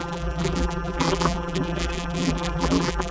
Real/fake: fake